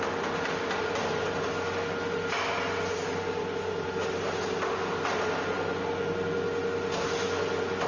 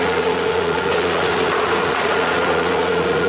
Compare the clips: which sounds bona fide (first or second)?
first